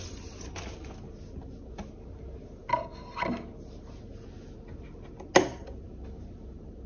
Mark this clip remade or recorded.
recorded